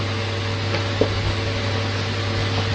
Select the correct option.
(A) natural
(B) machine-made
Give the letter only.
A